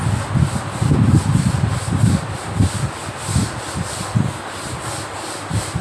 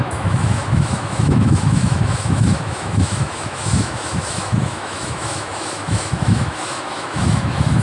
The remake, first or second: second